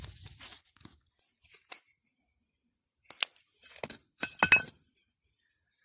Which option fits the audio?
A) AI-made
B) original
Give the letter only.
B